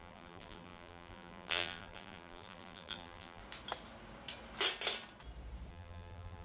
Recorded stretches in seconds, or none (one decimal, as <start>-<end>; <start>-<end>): 3.4-5.7